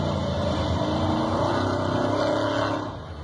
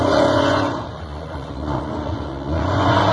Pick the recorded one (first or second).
first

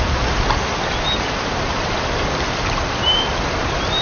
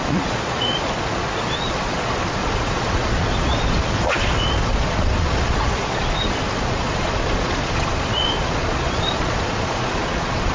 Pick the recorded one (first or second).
first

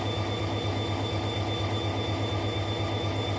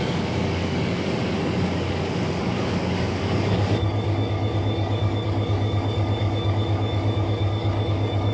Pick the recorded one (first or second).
first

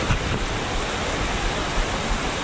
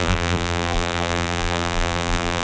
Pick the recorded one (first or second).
first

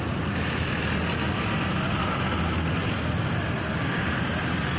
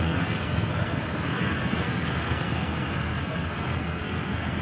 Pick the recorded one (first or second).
first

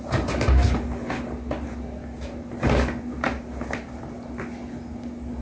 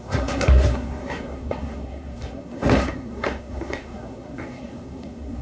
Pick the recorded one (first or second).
first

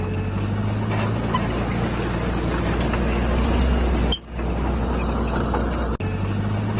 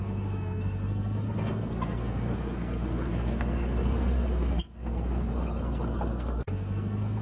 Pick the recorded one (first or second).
first